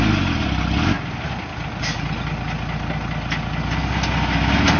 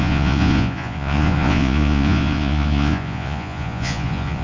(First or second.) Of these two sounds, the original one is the first